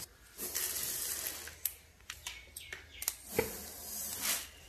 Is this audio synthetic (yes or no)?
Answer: no